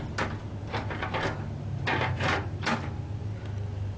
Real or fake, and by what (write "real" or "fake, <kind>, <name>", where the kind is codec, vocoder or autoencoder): real